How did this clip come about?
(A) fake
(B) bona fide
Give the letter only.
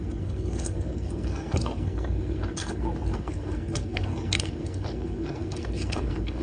A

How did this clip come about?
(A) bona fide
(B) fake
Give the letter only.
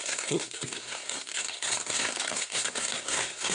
B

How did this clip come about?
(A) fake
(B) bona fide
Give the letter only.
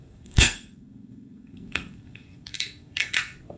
A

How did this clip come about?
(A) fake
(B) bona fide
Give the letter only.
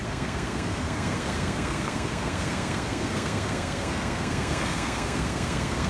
A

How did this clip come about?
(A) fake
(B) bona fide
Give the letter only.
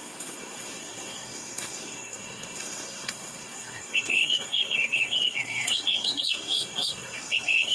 A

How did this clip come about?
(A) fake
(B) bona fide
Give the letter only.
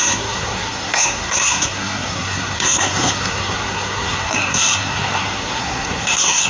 A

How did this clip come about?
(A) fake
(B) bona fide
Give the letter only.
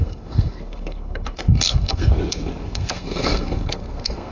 A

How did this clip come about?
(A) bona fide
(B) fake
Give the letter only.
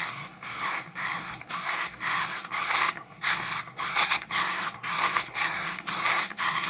B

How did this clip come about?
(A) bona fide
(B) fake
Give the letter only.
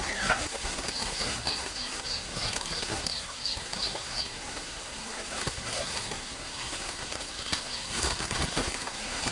B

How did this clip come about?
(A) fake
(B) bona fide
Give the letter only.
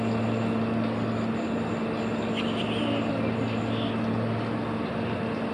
B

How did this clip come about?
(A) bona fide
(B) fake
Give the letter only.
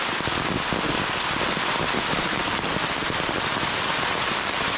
A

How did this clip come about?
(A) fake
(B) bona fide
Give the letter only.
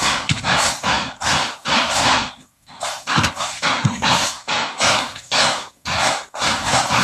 A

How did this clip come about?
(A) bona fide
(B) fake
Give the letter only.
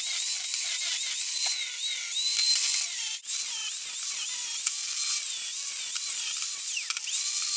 A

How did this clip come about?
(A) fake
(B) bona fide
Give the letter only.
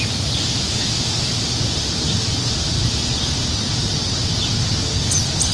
B